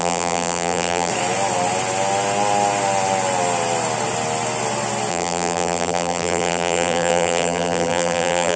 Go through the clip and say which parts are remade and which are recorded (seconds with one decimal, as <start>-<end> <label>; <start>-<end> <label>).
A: 0.0-1.1 remade; 1.1-5.1 recorded; 5.1-8.6 remade